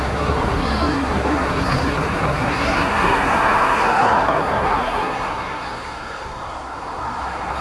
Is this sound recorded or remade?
remade